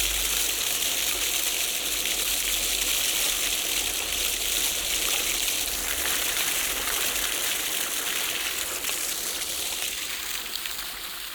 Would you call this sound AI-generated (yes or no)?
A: no